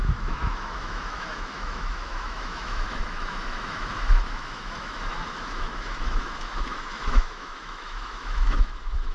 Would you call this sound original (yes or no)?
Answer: no